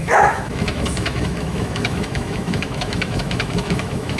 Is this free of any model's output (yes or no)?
no